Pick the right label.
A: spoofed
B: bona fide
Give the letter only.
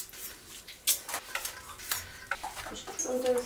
B